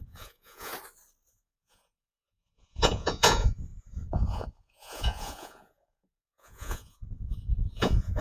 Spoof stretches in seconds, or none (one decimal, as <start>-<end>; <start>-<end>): 0.0-0.7; 1.3-8.2